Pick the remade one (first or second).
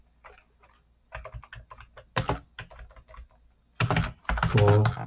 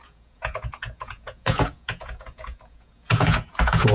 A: second